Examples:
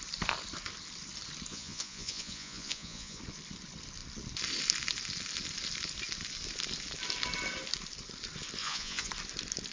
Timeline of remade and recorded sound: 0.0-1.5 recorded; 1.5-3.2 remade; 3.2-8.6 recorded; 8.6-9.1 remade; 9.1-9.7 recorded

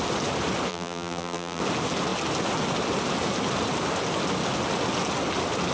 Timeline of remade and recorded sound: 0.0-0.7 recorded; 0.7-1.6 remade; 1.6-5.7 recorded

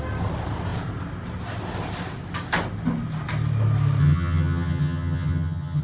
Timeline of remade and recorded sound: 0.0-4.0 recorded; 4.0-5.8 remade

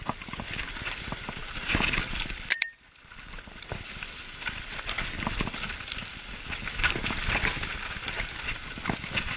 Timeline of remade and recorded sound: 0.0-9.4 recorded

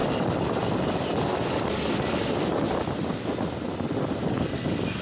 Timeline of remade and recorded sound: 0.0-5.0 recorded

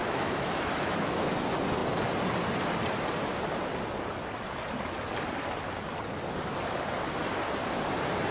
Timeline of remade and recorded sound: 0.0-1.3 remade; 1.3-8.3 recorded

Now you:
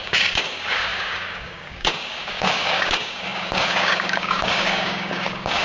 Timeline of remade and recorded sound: 0.0-5.6 remade